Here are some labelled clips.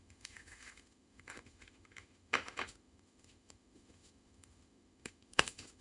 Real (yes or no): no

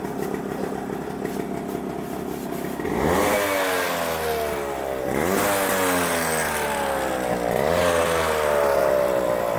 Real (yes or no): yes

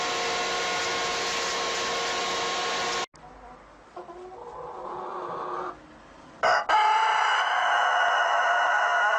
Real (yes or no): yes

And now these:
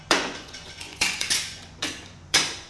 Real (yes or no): no